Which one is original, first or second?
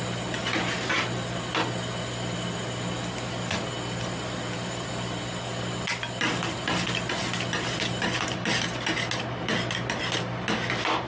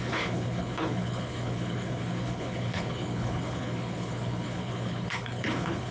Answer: first